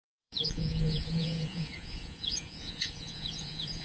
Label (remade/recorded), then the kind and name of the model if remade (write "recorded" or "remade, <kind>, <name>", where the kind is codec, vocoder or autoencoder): remade, vocoder, Vocos